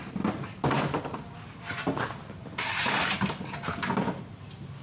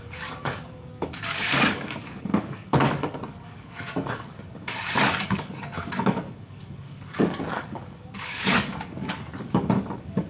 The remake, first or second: second